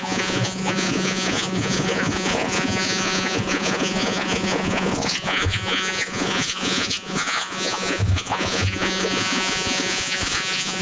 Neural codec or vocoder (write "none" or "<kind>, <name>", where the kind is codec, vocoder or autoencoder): vocoder, Vocos